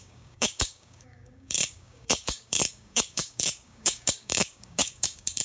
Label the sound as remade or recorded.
remade